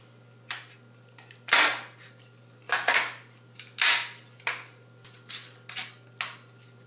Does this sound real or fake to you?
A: real